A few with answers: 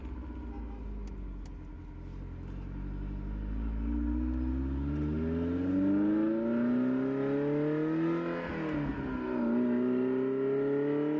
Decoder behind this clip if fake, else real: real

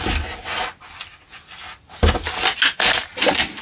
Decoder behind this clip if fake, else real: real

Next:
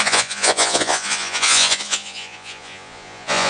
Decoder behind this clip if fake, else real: fake, vocoder, Vocos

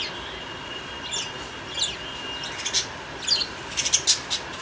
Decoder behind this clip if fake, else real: real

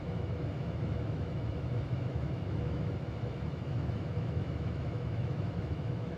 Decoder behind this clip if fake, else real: fake, autoencoder, DAC-VAE